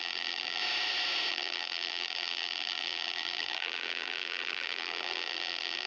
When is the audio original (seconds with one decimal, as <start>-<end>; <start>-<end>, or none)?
0.6-1.3